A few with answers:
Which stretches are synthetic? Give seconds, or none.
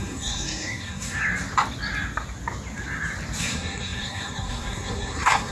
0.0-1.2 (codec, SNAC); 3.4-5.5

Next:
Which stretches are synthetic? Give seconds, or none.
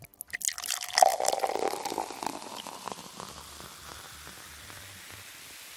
none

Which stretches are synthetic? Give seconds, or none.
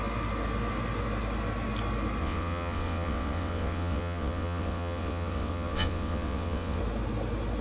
2.2-6.8 (vocoder, WaveNeXt)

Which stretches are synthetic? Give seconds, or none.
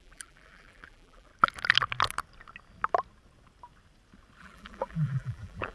0.0-1.3 (vocoder, BigVGAN v2); 4.4-5.7